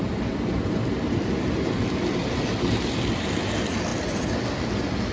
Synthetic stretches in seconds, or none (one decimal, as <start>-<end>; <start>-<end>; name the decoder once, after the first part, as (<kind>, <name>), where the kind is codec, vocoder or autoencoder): none